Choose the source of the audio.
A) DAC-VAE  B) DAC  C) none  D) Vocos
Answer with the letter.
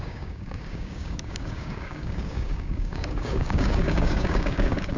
B